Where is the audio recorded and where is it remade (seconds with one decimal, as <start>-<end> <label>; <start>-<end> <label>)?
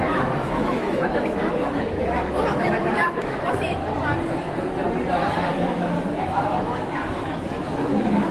0.0-3.8 remade; 3.8-5.5 recorded; 5.5-8.3 remade